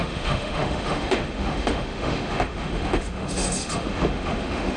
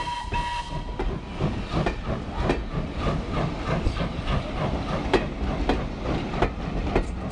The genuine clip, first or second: second